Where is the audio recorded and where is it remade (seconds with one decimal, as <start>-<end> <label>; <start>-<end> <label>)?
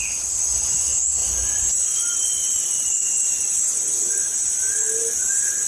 0.0-5.7 recorded